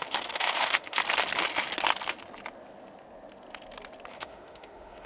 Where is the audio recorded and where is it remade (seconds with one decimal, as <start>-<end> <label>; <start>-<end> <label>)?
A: 0.0-1.0 remade; 1.0-4.1 recorded; 4.1-5.1 remade